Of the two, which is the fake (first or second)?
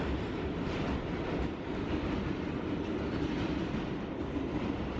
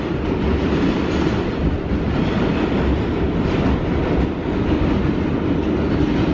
first